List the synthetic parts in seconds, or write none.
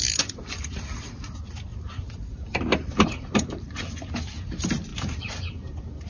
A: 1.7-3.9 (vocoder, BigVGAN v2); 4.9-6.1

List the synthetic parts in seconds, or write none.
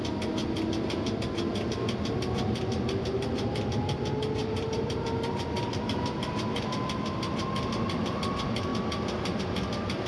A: 4.4-5.8 (vocoder, BigVGAN v2)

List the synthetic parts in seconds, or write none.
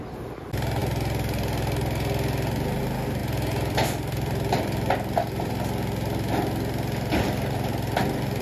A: 3.2-5.5 (vocoder, BigVGAN v2)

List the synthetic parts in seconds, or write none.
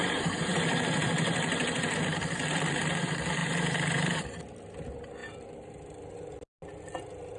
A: 0.0-2.8 (vocoder, BigVGAN v2); 3.4-4.4; 5.2-6.3